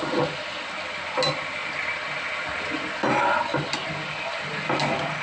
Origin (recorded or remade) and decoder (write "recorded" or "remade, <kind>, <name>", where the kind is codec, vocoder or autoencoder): recorded